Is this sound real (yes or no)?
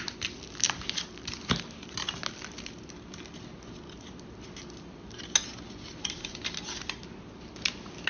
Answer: yes